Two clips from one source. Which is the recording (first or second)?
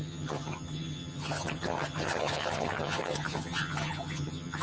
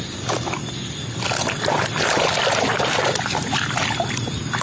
second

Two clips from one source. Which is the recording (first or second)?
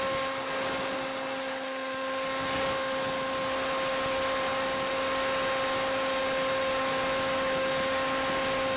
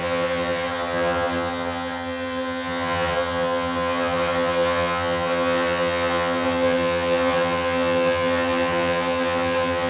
first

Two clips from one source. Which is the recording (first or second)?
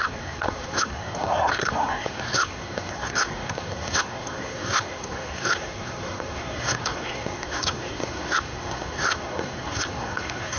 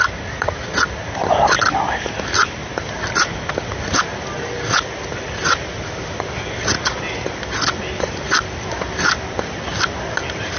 second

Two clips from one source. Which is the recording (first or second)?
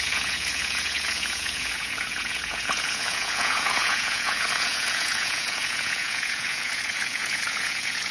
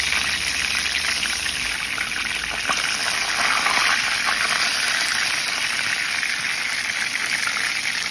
second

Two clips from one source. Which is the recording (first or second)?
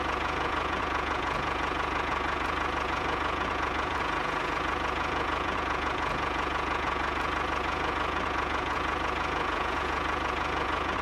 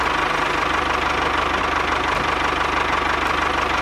second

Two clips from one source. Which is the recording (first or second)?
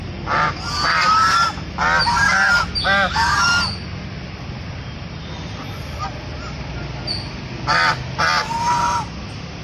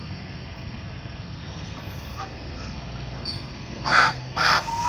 first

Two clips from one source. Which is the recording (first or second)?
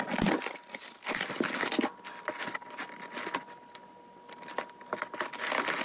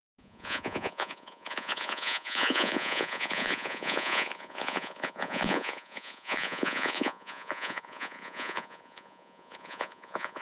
first